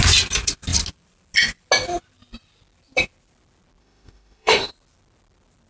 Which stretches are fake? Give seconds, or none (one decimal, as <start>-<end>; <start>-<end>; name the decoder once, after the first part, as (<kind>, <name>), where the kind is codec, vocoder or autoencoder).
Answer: 3.8-4.7 (autoencoder, DAC-VAE)